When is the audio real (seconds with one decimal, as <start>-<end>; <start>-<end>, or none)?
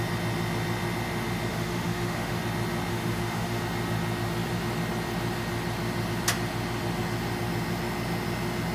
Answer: 0.0-1.5; 2.4-2.9; 3.6-8.7